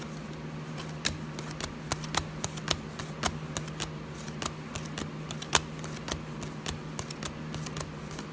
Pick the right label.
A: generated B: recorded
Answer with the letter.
B